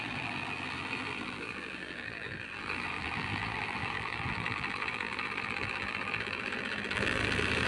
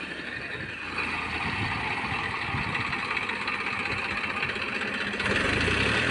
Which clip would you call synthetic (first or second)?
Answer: first